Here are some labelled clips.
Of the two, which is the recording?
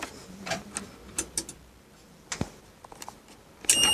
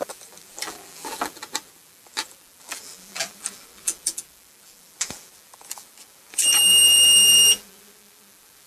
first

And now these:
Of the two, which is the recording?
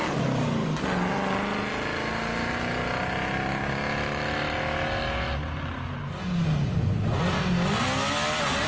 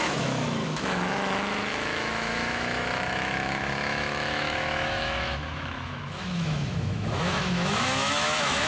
first